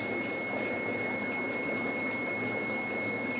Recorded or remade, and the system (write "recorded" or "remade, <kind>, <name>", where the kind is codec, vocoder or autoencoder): recorded